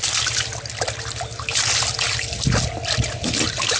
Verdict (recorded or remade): recorded